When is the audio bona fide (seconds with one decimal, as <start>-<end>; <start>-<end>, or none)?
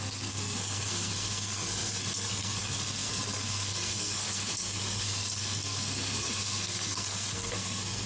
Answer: none